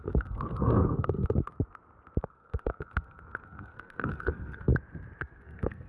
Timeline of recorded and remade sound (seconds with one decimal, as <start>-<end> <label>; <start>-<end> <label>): 0.0-1.5 remade; 1.5-2.2 recorded; 2.2-4.7 remade; 4.7-5.2 recorded; 5.2-5.9 remade